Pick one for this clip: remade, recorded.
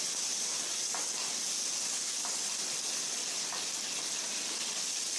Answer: recorded